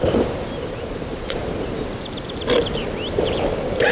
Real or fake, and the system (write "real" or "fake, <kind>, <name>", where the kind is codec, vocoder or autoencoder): real